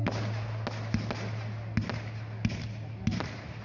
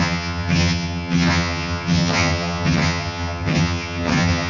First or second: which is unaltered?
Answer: first